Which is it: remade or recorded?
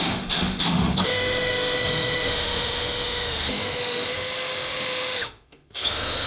remade